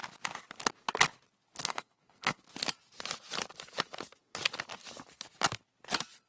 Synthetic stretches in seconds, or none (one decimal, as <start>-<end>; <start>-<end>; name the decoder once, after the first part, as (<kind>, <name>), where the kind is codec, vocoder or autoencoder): 1.6-2.4 (codec, SNAC)